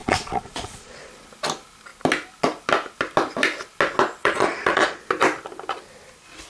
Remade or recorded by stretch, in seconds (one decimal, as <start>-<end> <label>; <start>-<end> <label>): 0.0-1.1 remade; 1.1-4.2 recorded; 4.2-5.0 remade; 5.0-6.5 recorded